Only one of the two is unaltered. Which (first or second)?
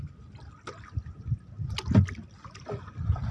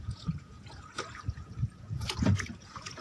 first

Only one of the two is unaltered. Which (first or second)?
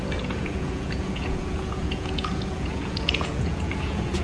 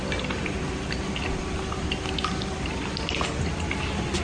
second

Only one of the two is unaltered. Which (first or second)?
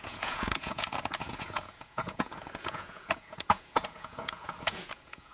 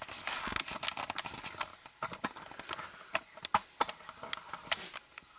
second